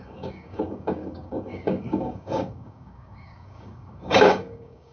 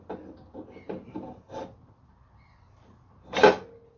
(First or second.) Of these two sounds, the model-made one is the first